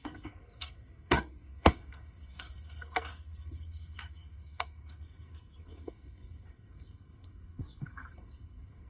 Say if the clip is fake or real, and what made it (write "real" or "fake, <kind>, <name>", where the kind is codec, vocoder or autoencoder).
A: fake, codec, SNAC